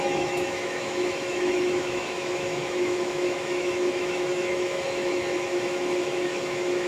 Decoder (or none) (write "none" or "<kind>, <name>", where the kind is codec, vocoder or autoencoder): autoencoder, DAC-VAE